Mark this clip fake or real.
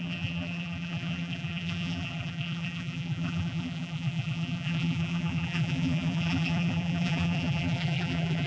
fake